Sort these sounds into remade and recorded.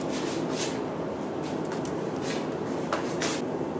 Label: recorded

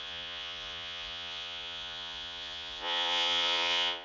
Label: remade